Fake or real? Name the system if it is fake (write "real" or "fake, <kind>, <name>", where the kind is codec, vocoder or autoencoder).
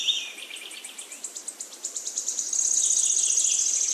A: real